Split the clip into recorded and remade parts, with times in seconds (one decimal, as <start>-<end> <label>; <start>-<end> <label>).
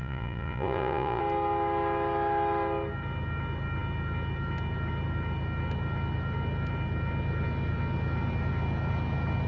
0.0-1.2 remade; 1.2-9.5 recorded